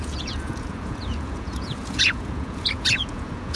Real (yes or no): no